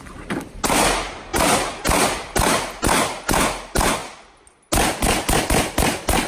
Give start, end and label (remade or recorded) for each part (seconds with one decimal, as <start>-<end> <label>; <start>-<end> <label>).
0.0-6.3 recorded